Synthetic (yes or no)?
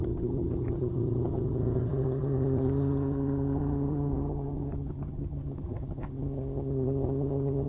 yes